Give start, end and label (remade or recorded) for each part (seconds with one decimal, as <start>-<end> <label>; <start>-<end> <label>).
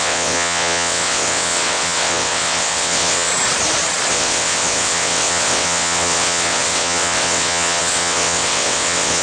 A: 0.0-3.3 remade; 3.3-4.1 recorded; 4.1-9.2 remade